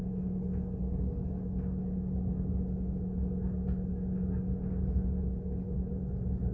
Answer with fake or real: real